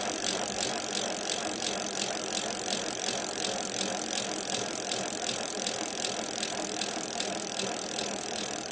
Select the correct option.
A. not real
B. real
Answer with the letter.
B